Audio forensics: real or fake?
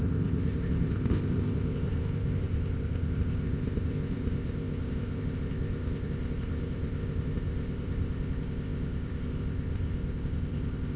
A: fake